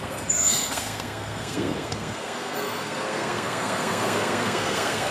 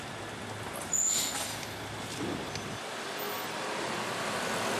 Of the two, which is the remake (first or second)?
first